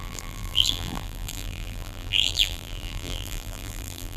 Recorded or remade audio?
remade